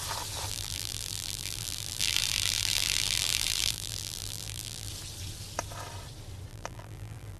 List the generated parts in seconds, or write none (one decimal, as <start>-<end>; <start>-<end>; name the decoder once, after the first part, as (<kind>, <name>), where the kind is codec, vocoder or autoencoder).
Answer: 0.5-4.9 (vocoder, BigVGAN v2); 6.5-7.4